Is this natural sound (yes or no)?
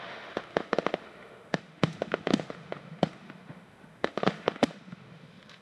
no